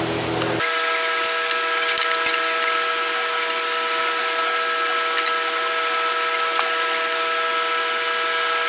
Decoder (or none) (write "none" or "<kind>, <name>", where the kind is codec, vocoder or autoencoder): none